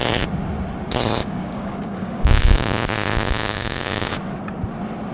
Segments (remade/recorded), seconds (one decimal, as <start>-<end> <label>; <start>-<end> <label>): 0.0-1.2 recorded; 1.2-2.4 remade; 2.4-3.1 recorded; 3.1-4.2 remade; 4.2-5.1 recorded